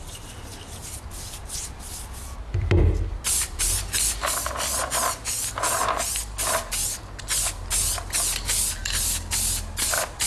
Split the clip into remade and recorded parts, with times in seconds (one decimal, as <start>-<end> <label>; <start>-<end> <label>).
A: 0.0-10.3 recorded